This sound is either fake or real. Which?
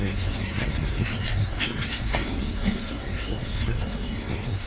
fake